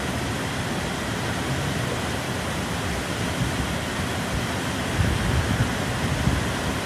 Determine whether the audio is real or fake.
real